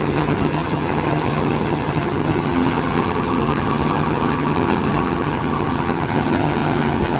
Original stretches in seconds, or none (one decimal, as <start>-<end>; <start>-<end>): none